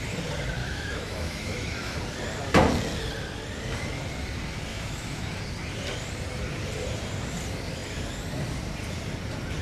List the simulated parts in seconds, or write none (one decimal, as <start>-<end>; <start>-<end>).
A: 0.6-2.0; 4.7-5.3